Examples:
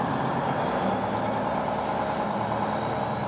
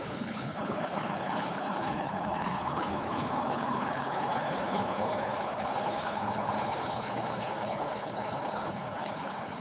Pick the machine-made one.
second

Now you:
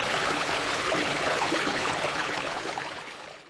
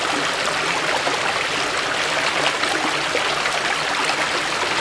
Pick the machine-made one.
first